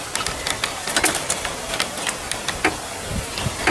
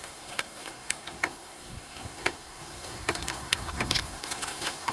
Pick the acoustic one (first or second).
first